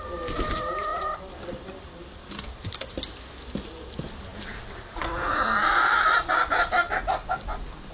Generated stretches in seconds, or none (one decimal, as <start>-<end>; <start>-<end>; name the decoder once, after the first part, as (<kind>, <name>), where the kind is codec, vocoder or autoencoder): none